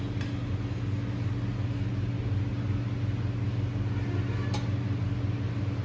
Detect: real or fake real